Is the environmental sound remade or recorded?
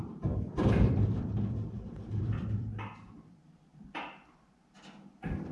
remade